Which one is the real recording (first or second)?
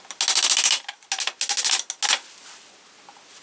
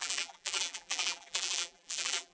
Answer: first